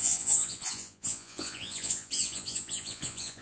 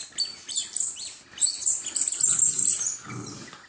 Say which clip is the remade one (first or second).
first